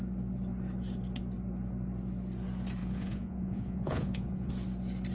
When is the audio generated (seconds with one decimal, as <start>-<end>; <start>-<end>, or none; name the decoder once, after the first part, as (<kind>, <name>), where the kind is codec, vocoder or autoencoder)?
2.8-4.5 (vocoder, Vocos)